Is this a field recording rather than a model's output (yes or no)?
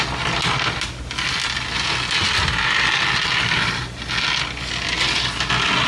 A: yes